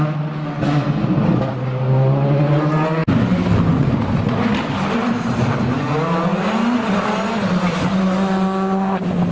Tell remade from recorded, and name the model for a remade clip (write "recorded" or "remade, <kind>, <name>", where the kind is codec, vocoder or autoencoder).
recorded